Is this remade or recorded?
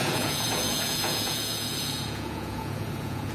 remade